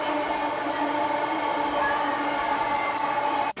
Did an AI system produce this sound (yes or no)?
no